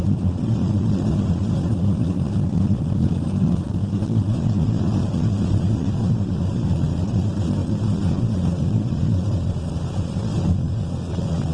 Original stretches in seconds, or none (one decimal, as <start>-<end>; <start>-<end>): none